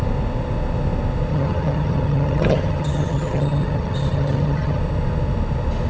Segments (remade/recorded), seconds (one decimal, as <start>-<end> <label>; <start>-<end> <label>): 0.0-1.3 recorded; 1.3-4.8 remade; 4.8-5.9 recorded